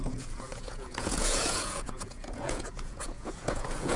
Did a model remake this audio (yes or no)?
yes